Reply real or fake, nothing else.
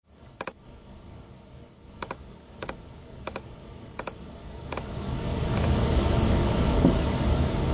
fake